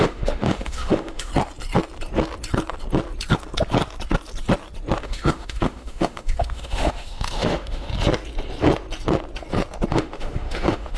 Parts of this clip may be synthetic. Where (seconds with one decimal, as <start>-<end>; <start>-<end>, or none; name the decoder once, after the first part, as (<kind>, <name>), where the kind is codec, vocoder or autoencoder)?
0.0-1.3 (autoencoder, DAC-VAE); 5.0-7.9; 9.9-11.0